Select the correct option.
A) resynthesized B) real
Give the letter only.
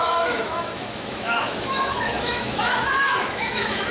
A